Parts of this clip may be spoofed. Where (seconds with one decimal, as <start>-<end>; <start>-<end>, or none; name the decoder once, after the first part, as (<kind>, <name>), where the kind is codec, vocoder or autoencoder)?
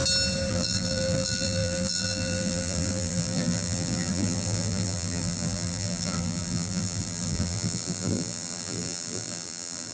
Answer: 0.5-9.9 (vocoder, BigVGAN v2)